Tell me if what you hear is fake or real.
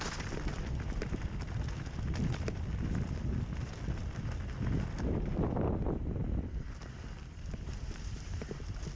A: real